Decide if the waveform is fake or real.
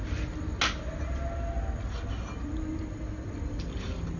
real